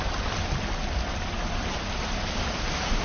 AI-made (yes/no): no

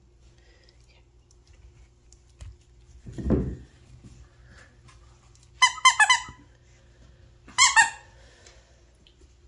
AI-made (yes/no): no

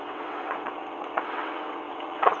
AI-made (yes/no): yes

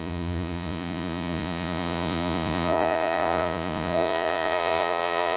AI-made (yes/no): yes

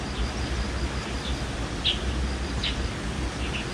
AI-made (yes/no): no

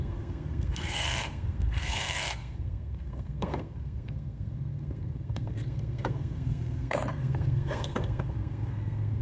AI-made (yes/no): yes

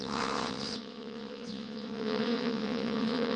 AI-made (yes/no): yes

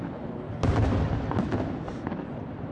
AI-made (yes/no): no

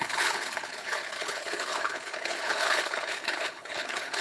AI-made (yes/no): yes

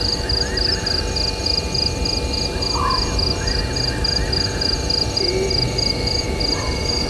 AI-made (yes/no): no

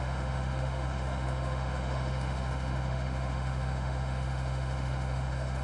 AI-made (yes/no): yes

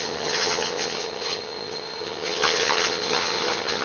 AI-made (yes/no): yes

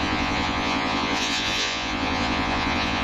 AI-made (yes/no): yes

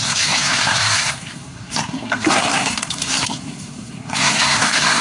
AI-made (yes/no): yes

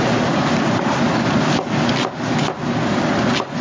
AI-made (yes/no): no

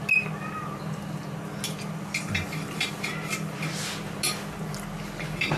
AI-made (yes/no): no